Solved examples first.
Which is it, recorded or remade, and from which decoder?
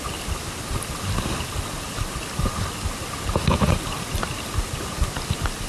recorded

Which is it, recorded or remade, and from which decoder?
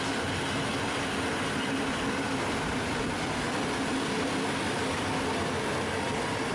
recorded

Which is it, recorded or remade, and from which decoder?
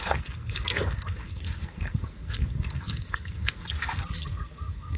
remade, codec, SNAC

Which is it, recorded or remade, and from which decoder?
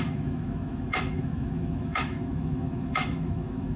remade, autoencoder, DAC-VAE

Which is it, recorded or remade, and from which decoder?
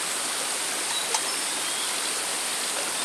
recorded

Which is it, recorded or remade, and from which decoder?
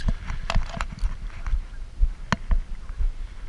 recorded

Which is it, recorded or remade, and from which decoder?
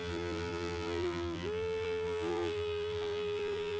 remade, vocoder, BigVGAN v2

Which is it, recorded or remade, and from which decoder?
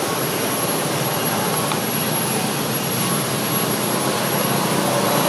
recorded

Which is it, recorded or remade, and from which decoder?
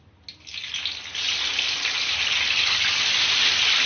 recorded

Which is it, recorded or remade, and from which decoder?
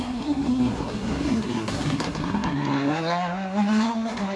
remade, codec, SNAC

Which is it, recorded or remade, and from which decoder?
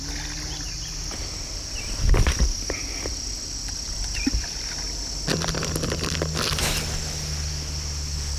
recorded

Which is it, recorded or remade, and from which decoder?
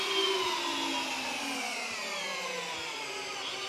recorded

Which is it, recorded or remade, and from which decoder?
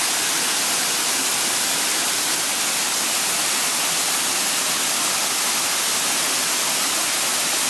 recorded